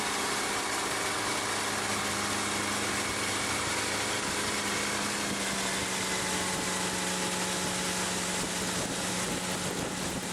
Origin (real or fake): real